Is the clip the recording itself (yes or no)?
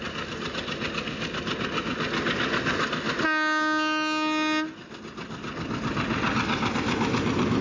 yes